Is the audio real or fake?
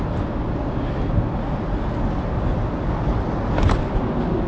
real